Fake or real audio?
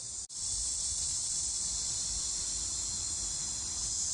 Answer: real